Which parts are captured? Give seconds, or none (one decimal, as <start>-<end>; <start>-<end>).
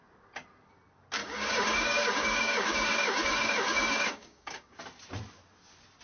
0.0-1.2; 4.8-6.0